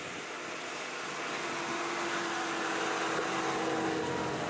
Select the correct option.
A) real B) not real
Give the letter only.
A